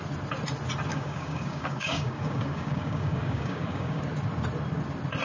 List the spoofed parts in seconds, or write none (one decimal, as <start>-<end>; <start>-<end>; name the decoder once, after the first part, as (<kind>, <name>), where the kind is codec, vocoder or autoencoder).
0.9-4.0 (codec, DAC)